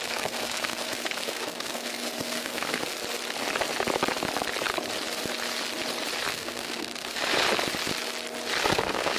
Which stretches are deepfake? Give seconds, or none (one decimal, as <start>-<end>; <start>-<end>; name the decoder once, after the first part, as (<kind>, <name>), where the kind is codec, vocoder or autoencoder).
0.0-2.9 (codec, SNAC); 6.3-7.2; 8.7-9.2